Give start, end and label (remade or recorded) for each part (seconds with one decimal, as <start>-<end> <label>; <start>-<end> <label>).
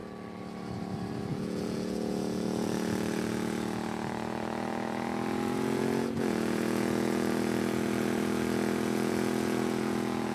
0.0-1.3 recorded; 1.3-10.3 remade